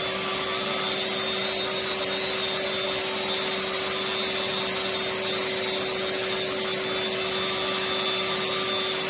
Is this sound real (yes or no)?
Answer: yes